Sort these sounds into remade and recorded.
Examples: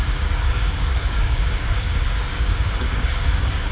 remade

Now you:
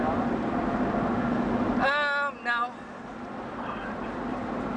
recorded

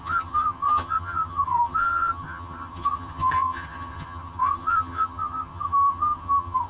remade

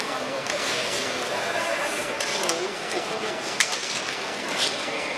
remade